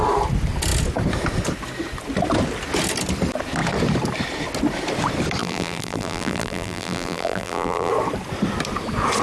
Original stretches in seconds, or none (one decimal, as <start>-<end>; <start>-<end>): 0.0-5.4; 7.9-9.2